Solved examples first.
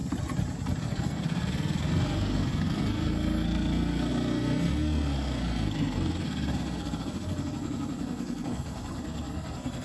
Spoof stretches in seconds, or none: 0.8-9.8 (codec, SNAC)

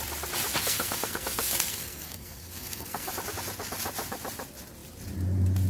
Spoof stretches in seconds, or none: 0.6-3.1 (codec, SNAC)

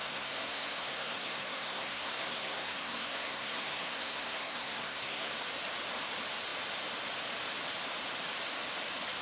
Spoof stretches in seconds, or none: 0.0-5.3 (codec, SNAC)

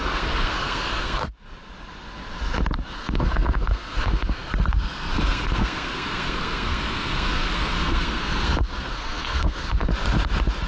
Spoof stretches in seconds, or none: 0.0-1.2 (codec, SNAC); 2.9-9.9

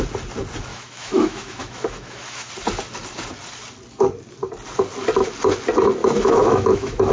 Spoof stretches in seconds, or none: 0.7-2.5 (autoencoder, DAC-VAE); 6.0-7.1